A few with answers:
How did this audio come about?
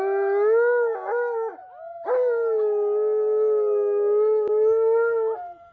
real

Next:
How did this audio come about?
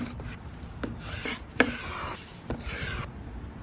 fake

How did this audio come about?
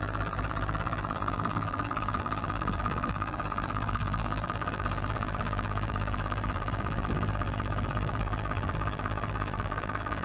fake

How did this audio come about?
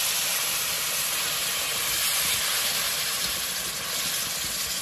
fake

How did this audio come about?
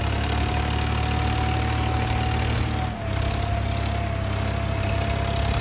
real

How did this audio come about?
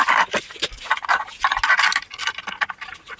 real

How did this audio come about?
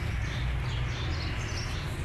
real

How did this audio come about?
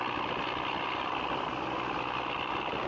real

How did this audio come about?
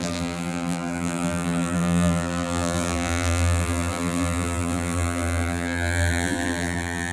fake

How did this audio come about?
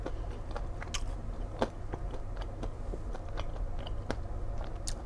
real